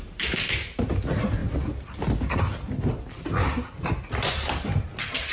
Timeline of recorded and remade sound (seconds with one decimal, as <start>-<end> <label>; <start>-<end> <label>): 0.0-5.3 recorded